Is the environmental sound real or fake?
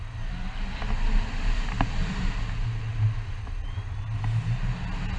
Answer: real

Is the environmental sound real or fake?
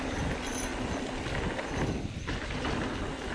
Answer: real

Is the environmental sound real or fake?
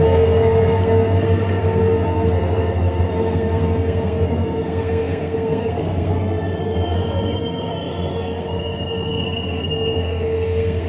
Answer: fake